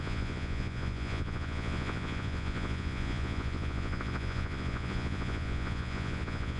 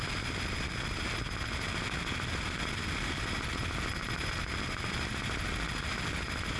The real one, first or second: second